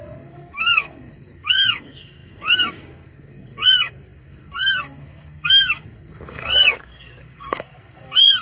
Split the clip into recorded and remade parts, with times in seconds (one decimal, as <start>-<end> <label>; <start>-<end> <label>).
0.0-8.4 remade